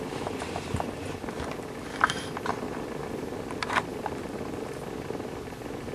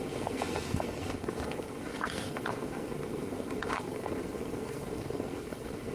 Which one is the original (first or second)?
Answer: first